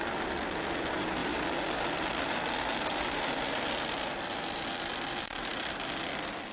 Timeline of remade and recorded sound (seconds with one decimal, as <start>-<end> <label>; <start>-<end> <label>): 0.0-1.2 recorded; 1.2-5.1 remade; 5.1-6.5 recorded